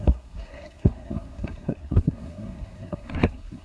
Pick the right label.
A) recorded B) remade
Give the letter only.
B